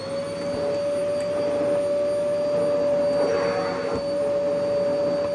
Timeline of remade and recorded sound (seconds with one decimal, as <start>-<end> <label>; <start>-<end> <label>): 0.0-5.3 recorded